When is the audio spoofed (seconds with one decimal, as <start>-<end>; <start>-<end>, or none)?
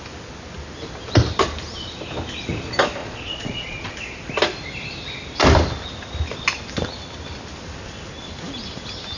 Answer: 3.0-3.9